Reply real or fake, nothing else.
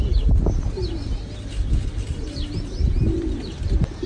real